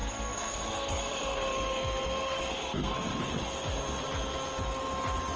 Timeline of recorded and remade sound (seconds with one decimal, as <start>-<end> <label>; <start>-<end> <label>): 0.0-3.2 remade; 3.2-5.4 recorded